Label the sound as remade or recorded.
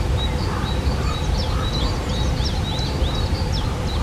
recorded